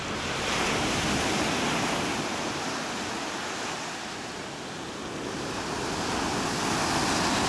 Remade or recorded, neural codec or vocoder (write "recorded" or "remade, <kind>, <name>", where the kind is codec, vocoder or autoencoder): recorded